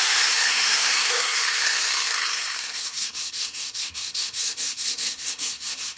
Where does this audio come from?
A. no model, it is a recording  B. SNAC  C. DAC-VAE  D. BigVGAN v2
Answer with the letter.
B